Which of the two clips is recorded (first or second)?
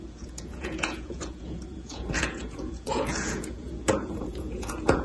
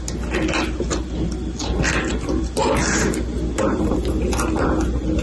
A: second